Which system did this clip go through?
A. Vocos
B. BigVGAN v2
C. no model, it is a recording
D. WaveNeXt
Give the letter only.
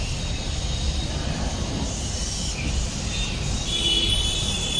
C